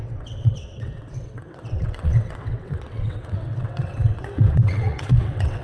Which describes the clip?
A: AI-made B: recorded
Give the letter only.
A